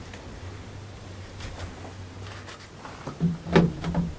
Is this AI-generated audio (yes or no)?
no